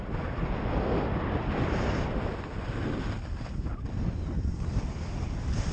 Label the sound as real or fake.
real